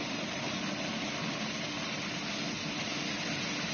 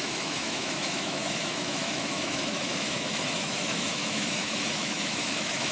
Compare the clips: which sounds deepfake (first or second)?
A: second